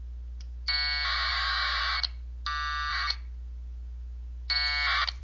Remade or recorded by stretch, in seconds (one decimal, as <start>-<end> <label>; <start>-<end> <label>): 0.0-1.3 recorded; 1.3-1.8 remade; 1.8-5.2 recorded